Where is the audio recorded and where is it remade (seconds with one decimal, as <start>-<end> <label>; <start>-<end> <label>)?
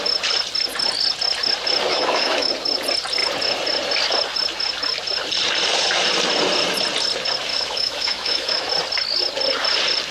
0.0-1.9 recorded; 1.9-2.5 remade; 2.5-7.5 recorded; 7.5-8.7 remade; 8.7-10.1 recorded